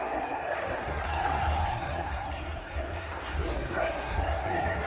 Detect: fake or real fake